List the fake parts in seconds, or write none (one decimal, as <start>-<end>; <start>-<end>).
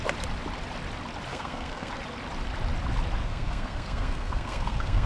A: 1.3-1.9; 3.2-5.1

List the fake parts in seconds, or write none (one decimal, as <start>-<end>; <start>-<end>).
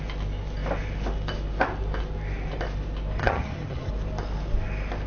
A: 3.2-3.9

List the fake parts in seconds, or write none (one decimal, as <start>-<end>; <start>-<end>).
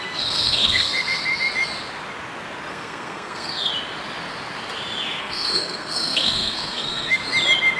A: 0.0-1.2; 2.7-3.7; 5.2-7.2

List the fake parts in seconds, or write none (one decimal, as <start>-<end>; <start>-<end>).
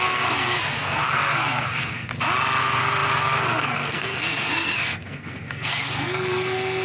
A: 0.0-2.1; 2.6-6.8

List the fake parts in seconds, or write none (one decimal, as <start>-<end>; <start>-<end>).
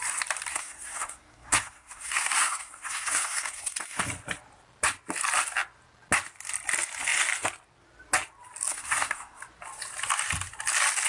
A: 0.5-4.0; 8.7-9.4